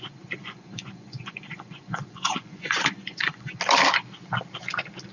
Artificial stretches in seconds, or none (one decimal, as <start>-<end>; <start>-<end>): 0.4-3.5